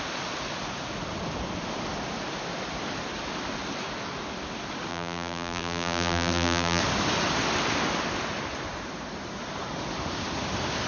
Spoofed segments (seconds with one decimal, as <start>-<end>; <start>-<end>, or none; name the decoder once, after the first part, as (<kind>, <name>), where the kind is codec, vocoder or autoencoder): 4.9-6.8 (vocoder, BigVGAN v2)